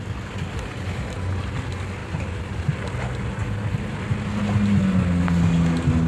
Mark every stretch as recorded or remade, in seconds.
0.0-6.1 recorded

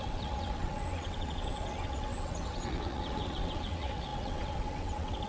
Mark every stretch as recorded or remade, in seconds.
0.0-5.3 remade

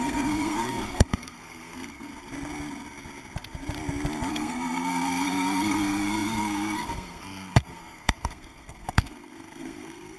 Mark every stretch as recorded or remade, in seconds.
0.0-2.1 remade; 2.1-4.3 recorded; 4.3-10.2 remade

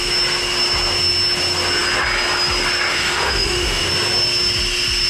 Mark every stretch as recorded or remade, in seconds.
0.0-2.9 recorded; 2.9-3.9 remade; 3.9-5.1 recorded

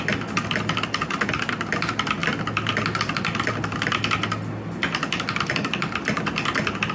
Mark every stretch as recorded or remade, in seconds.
0.0-6.9 recorded

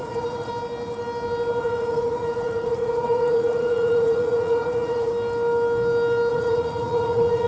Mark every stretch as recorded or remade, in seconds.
0.0-0.5 remade; 0.5-1.6 recorded; 1.6-5.1 remade; 5.1-6.3 recorded; 6.3-7.5 remade